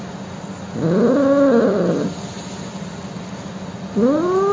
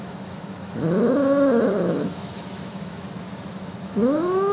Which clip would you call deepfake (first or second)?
second